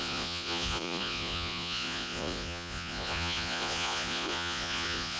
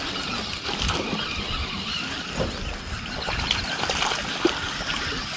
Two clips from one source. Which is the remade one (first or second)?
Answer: first